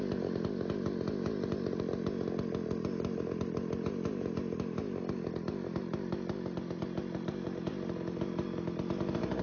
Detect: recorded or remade recorded